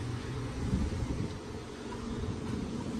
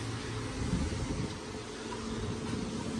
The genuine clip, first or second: second